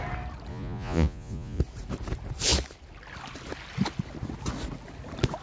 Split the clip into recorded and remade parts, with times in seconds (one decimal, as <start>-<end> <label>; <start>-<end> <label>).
0.0-0.5 recorded; 0.5-1.6 remade; 1.6-5.4 recorded